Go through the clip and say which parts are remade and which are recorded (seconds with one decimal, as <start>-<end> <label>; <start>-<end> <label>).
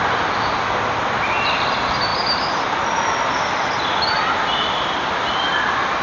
0.0-6.0 recorded